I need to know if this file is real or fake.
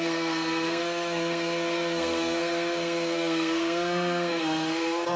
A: fake